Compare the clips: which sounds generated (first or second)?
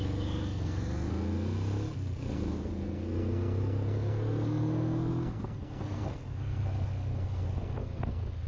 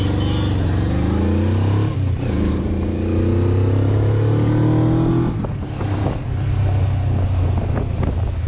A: first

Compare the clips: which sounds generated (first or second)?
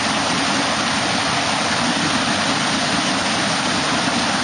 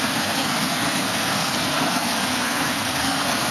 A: second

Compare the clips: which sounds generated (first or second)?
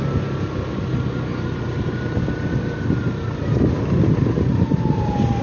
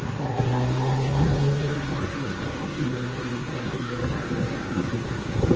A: second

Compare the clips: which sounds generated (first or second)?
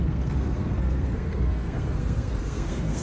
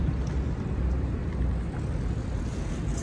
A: first